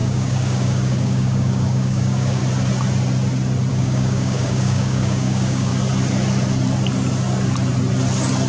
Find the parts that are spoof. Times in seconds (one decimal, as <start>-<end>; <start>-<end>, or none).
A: 0.0-2.4; 3.7-5.7